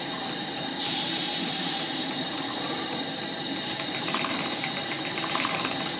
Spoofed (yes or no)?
yes